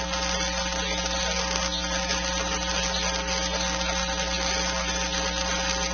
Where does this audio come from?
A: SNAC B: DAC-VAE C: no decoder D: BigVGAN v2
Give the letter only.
C